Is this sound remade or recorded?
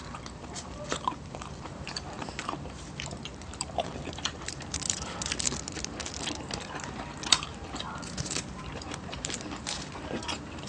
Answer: remade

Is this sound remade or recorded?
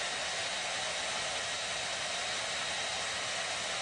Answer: recorded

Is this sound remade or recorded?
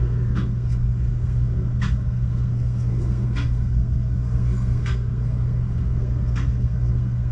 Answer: remade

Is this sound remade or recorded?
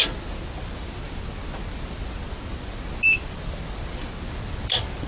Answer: recorded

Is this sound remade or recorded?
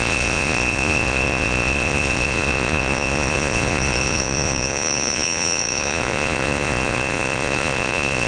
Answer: remade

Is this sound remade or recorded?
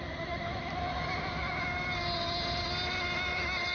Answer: recorded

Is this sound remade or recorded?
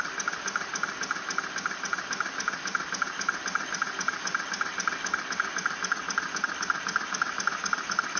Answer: recorded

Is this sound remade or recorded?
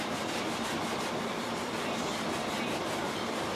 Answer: remade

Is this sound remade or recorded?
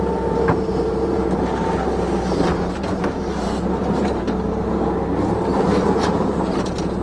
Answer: remade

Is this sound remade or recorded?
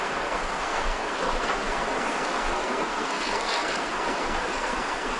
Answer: remade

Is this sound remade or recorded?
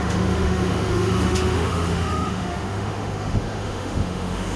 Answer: remade